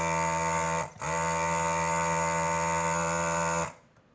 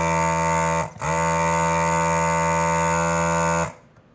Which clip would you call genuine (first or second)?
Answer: second